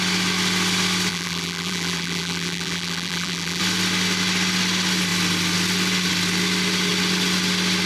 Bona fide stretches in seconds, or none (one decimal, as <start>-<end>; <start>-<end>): 0.0-1.1; 3.6-7.9